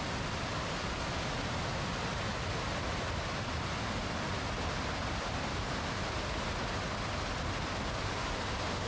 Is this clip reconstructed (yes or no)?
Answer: no